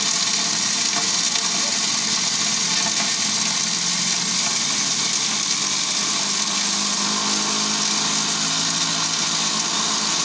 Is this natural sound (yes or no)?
yes